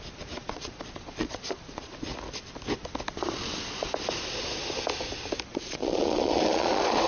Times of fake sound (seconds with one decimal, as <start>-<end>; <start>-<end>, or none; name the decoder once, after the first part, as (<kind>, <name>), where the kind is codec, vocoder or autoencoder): 0.4-1.9 (vocoder, Vocos); 5.5-7.1

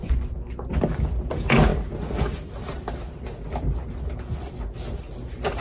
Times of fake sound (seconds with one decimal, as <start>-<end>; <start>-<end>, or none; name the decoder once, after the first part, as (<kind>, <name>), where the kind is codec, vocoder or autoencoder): 0.0-0.8 (vocoder, Vocos)

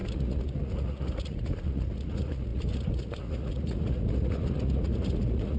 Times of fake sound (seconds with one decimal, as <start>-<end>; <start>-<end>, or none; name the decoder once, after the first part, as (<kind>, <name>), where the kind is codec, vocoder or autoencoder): 0.0-5.6 (vocoder, Vocos)

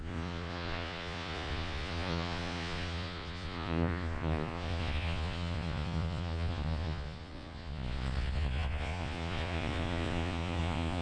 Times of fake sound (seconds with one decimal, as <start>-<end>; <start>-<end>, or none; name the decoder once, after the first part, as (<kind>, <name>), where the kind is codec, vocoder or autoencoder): 0.0-11.0 (vocoder, Vocos)

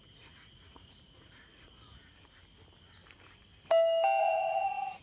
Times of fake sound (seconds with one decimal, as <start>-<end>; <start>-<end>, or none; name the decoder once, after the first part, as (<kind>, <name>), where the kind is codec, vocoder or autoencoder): 0.0-2.1 (vocoder, Vocos); 4.2-5.0

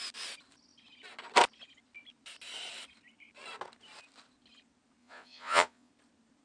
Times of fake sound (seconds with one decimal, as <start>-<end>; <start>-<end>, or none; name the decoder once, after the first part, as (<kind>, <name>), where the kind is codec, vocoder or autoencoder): 5.0-5.9 (vocoder, Vocos)

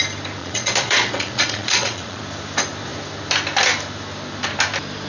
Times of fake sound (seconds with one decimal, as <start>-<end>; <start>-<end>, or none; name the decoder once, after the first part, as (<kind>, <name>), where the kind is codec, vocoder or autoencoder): 0.4-2.2 (vocoder, Vocos)